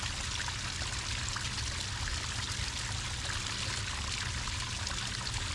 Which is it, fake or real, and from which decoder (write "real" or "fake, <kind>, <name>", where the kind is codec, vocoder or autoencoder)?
real